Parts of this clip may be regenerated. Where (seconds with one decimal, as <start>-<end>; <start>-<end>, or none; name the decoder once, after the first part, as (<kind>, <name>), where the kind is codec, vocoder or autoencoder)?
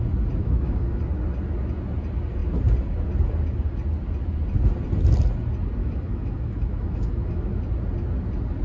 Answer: 0.4-1.0 (autoencoder, DAC-VAE); 5.8-7.6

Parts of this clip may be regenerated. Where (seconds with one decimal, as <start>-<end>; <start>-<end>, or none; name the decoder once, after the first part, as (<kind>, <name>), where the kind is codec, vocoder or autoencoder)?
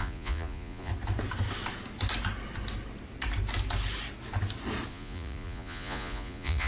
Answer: 0.0-0.9 (vocoder, Vocos); 4.9-6.7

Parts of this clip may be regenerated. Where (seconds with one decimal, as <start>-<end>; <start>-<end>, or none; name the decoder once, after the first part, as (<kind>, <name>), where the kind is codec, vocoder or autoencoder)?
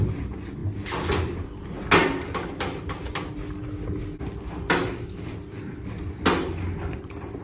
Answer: none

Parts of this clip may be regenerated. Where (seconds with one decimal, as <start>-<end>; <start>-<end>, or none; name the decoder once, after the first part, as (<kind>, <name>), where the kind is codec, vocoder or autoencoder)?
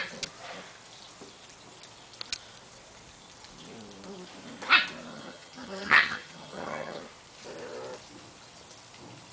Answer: 5.1-7.0 (vocoder, HiFi-GAN)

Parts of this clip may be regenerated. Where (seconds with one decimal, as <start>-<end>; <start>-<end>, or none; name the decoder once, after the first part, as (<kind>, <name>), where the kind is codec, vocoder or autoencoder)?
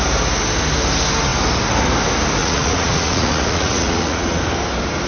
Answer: 2.4-4.4 (vocoder, Vocos)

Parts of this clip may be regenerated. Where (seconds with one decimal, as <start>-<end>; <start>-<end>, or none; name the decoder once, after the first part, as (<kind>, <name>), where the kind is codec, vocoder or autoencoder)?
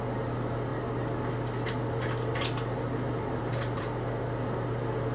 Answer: none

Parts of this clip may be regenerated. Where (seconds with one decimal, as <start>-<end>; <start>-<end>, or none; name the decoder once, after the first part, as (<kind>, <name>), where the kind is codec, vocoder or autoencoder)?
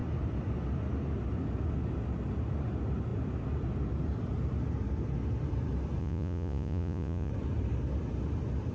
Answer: 6.0-7.3 (vocoder, Vocos)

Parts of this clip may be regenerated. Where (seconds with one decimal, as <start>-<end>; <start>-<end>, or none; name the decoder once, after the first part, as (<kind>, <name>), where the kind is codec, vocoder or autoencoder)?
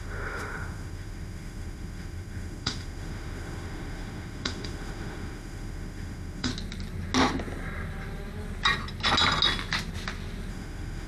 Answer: 0.0-6.5 (autoencoder, DAC-VAE); 10.5-11.1